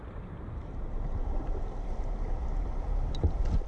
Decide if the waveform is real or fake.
real